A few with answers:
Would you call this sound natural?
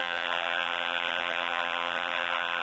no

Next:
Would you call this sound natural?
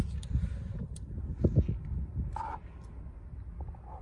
yes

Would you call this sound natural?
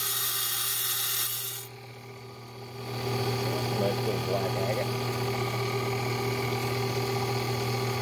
yes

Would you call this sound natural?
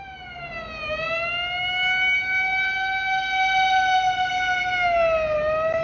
yes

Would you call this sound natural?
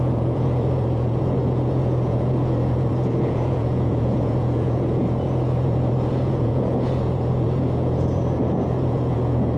no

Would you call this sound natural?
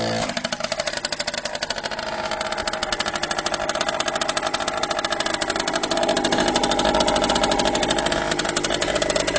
yes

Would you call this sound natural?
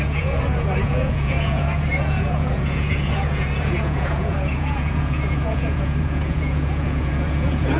no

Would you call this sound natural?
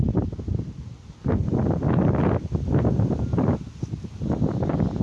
yes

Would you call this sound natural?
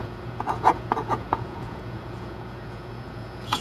no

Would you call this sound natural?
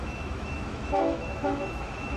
no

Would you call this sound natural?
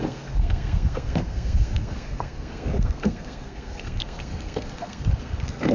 no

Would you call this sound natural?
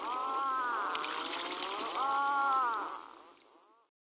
yes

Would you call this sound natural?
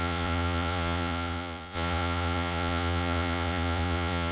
no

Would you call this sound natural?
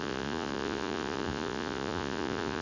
no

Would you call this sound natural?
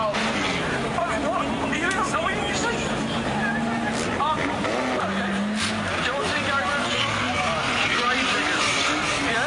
yes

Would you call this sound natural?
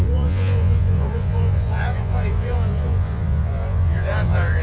no